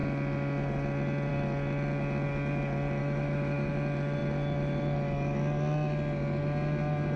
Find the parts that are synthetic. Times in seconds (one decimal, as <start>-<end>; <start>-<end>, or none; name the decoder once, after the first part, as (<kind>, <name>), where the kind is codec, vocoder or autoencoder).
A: 3.0-3.7 (autoencoder, DAC-VAE)